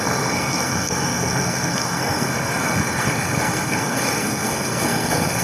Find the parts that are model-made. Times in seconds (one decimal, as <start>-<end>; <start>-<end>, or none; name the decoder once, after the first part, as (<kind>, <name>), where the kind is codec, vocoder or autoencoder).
0.0-5.4 (codec, SNAC)